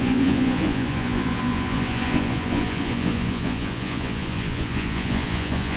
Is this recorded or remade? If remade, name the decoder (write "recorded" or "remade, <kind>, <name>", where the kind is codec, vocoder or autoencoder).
remade, vocoder, Vocos